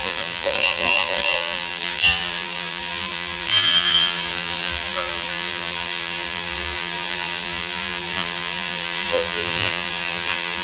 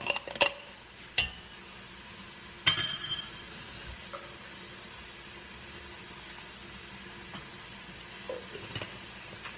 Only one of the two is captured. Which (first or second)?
second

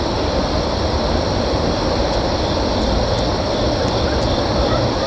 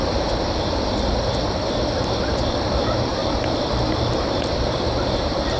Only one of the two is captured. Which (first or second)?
first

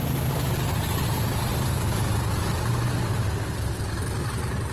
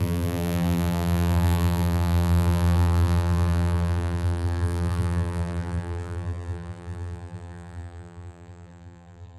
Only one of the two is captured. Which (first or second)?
first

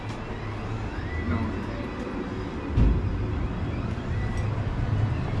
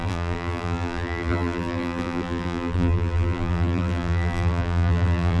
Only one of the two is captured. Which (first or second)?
first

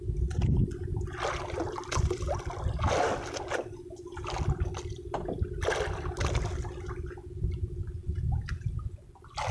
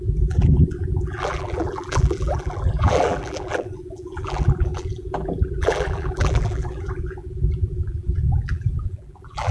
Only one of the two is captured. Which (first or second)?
first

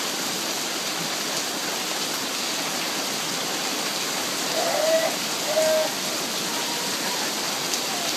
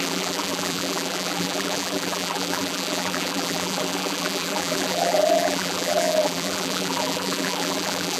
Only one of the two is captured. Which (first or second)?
first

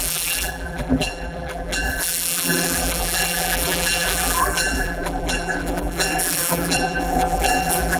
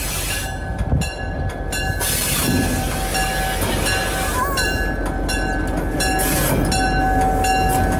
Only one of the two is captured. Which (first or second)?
second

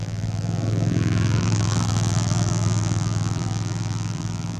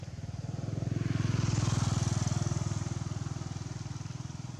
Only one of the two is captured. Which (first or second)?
second